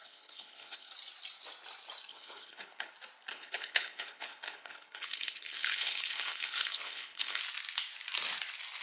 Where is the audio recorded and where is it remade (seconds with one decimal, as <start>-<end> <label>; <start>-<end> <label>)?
0.0-0.9 remade; 0.9-2.1 recorded; 2.1-2.9 remade; 2.9-3.3 recorded; 3.3-7.4 remade; 7.4-8.8 recorded